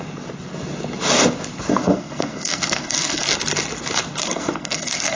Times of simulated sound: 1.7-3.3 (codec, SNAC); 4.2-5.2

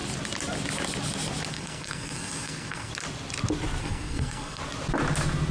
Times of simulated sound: 1.5-2.9 (codec, SNAC); 3.8-4.6

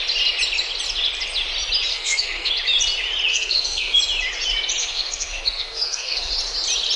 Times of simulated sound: 1.9-2.5 (codec, SNAC); 3.3-4.0; 4.8-6.3

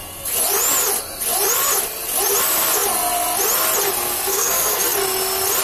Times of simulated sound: 4.3-4.8 (codec, SNAC)

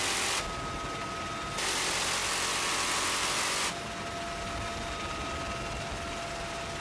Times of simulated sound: none

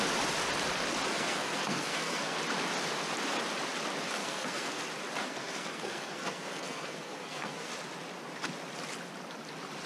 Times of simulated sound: 1.1-2.4 (codec, SNAC); 4.2-4.8; 5.2-7.7